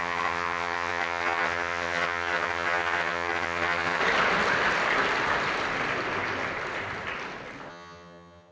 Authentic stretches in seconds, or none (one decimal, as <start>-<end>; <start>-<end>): 4.0-7.7